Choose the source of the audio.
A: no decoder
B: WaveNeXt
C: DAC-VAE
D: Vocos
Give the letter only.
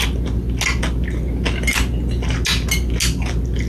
A